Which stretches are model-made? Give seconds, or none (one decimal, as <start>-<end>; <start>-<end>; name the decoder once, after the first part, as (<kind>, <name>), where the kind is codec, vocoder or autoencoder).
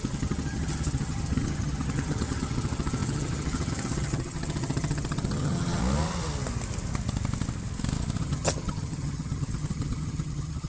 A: 0.0-5.8 (vocoder, HiFi-GAN); 8.2-10.7